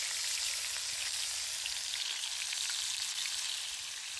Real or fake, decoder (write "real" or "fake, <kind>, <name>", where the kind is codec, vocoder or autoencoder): real